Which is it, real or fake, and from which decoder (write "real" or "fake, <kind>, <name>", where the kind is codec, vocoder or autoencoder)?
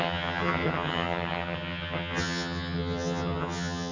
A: fake, vocoder, HiFi-GAN